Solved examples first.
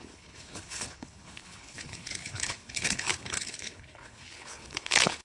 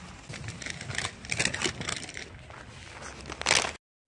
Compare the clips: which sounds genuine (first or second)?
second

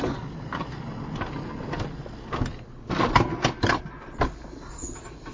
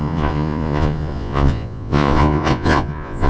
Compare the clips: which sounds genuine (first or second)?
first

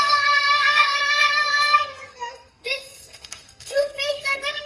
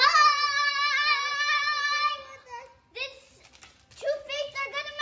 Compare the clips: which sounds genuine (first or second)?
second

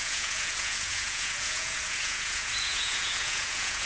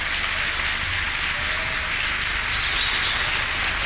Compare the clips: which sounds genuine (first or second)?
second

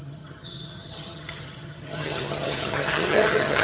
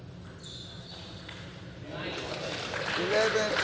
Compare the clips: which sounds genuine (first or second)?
second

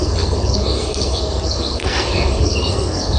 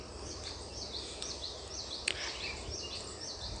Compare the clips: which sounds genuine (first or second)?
second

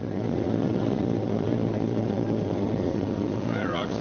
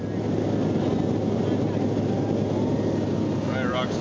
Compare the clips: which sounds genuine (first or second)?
second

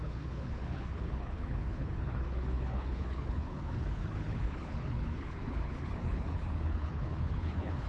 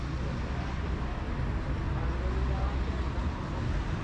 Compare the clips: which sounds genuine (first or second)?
second